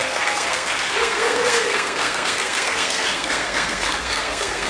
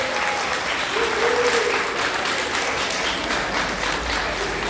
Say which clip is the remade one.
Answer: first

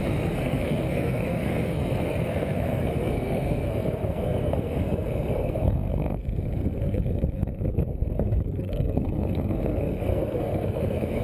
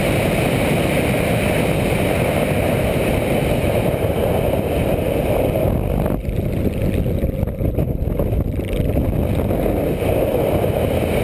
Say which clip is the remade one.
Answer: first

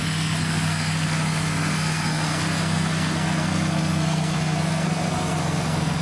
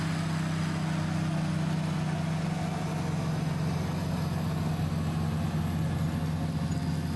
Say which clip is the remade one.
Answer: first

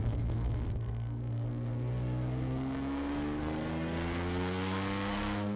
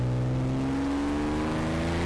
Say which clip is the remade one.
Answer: first